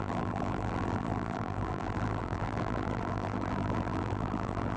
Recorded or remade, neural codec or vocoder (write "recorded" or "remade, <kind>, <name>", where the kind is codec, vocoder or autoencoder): remade, vocoder, BigVGAN v2